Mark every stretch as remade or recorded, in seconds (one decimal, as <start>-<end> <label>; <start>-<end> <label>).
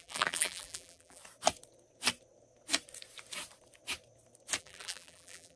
0.0-1.2 remade; 1.2-4.6 recorded; 4.6-5.6 remade